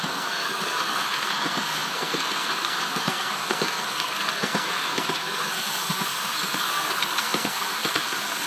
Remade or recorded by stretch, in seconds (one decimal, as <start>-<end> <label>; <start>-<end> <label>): 0.0-8.5 remade